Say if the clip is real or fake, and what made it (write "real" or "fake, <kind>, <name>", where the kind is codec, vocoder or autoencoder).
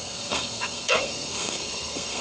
fake, codec, SNAC